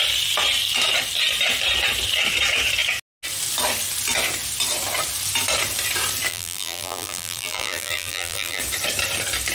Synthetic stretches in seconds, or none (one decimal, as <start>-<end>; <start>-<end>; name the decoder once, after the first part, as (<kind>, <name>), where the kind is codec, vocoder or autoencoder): 6.3-8.6 (vocoder, BigVGAN v2)